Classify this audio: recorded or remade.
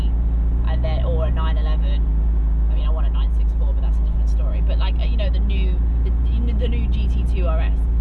recorded